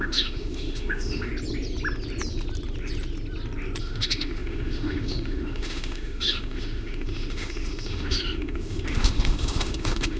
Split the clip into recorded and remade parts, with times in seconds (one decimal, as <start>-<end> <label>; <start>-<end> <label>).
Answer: 0.0-1.3 remade; 1.3-3.8 recorded; 3.8-10.2 remade